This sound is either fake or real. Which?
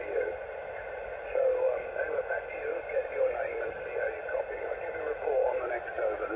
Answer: real